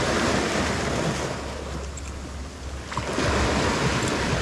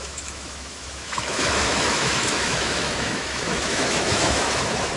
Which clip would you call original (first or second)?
first